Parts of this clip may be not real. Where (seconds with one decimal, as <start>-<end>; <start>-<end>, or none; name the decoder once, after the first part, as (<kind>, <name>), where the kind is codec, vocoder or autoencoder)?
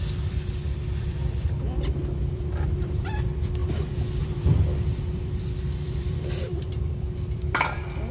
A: 0.0-3.6 (vocoder, BigVGAN v2); 4.2-8.1